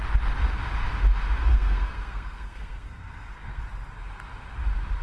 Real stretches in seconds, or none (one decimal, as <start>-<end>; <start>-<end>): 0.0-1.5; 3.6-5.0